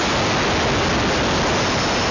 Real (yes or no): yes